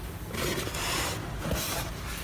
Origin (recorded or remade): recorded